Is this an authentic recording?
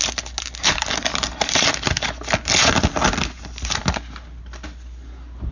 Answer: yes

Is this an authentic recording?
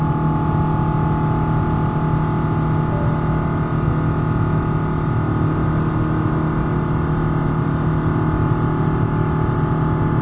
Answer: yes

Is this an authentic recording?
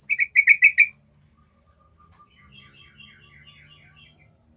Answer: yes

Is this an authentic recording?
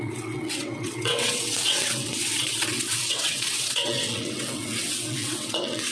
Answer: no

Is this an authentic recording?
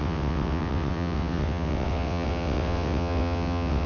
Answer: no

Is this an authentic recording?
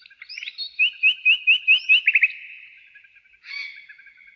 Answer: yes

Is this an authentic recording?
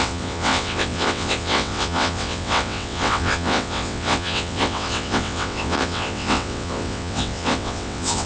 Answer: no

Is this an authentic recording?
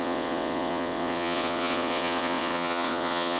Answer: no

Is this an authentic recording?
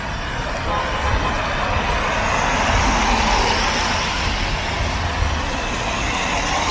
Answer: yes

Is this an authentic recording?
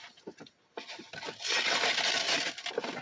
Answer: yes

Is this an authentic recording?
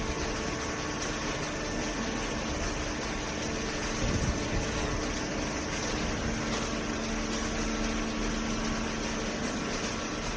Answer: yes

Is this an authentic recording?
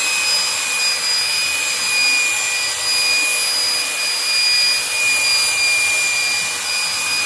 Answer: yes